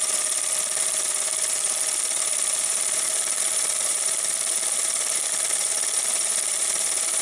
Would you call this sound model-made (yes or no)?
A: yes